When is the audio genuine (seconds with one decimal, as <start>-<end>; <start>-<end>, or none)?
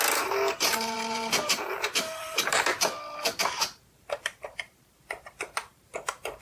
2.7-3.4